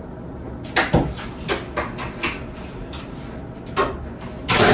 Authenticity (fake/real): real